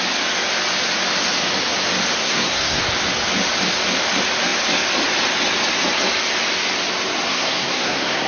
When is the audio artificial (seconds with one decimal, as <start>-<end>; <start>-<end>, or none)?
2.2-2.8; 7.3-8.3